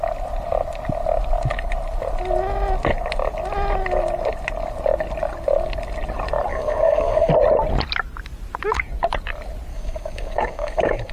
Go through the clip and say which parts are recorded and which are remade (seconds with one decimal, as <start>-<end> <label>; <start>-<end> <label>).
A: 0.0-6.5 recorded; 6.5-7.3 remade; 7.3-9.7 recorded; 9.7-11.1 remade